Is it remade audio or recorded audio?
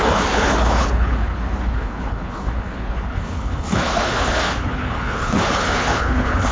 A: remade